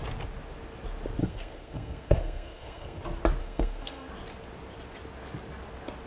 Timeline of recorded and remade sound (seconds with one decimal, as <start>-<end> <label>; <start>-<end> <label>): 0.0-1.2 recorded; 1.2-3.0 remade; 3.0-3.4 recorded; 3.4-4.1 remade; 4.1-6.1 recorded